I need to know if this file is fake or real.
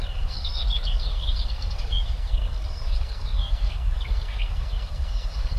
fake